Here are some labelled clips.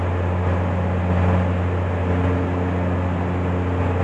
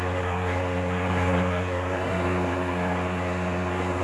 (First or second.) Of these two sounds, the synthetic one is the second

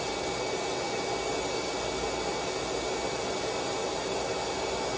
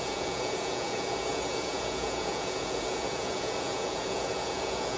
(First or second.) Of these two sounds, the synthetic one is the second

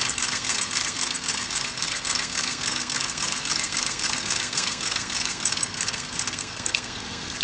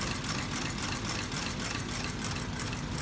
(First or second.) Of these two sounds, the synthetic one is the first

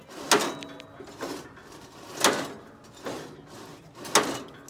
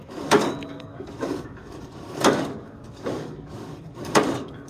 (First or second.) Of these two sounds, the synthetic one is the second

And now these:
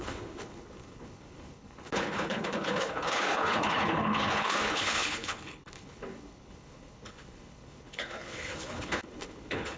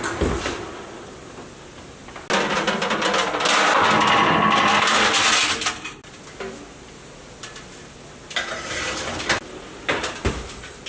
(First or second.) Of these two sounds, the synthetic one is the first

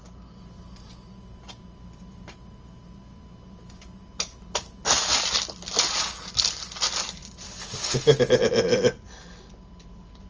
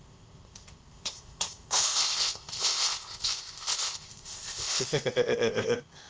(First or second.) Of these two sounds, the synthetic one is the second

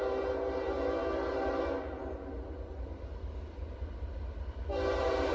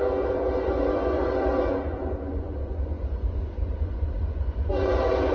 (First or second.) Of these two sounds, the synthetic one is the second